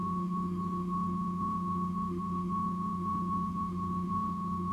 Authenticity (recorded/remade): remade